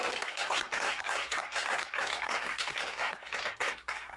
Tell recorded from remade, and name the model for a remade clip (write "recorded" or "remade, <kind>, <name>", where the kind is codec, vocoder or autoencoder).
remade, codec, SNAC